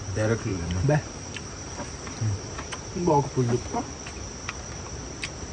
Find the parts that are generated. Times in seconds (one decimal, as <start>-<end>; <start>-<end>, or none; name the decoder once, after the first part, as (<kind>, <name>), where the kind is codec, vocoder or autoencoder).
0.5-3.8 (vocoder, BigVGAN v2)